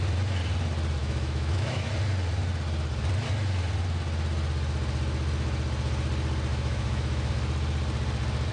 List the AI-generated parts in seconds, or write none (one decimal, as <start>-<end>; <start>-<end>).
1.0-1.9; 6.5-7.3